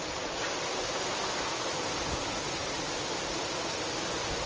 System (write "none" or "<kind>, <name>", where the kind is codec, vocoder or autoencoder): none